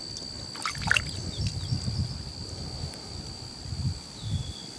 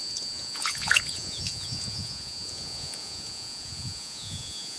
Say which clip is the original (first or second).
first